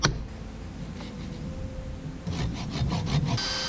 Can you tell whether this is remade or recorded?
recorded